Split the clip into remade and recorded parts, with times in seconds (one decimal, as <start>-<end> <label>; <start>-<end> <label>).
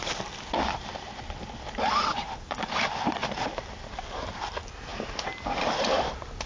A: 0.0-6.5 recorded